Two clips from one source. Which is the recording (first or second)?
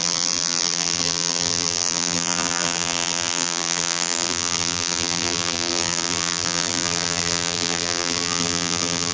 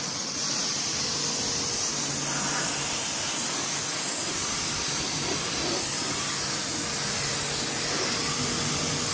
second